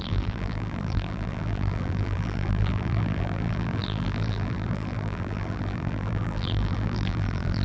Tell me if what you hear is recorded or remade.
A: remade